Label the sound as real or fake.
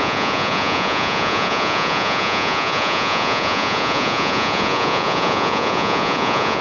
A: fake